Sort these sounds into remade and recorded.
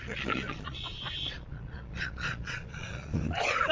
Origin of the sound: remade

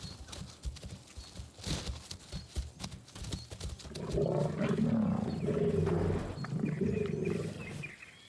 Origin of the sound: recorded